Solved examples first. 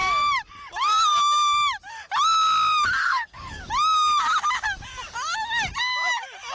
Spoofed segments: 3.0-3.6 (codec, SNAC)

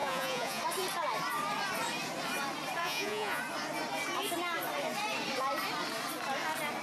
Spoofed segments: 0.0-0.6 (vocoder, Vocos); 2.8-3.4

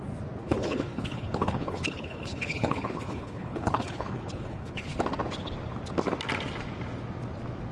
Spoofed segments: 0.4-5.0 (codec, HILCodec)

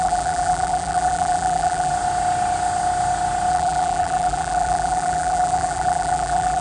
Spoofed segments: 0.0-1.9 (vocoder, BigVGAN v2); 3.5-6.6

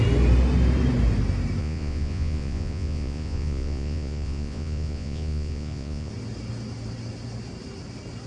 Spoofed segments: 1.6-6.1 (vocoder, Vocos)

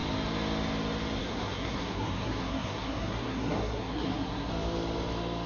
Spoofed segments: 1.2-4.5 (codec, SNAC)